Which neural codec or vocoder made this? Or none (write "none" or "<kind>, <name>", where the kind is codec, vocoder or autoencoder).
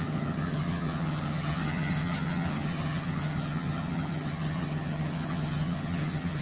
vocoder, HiFi-GAN